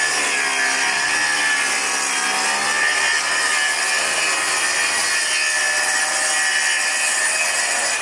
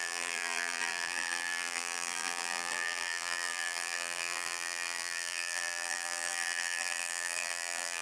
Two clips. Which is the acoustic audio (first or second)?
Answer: first